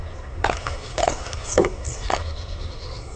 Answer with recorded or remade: remade